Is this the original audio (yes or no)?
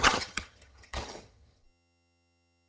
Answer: no